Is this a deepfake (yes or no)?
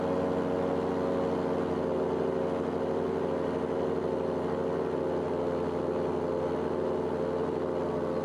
no